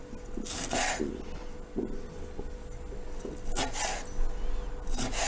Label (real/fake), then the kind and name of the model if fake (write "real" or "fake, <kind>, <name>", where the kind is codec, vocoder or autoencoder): real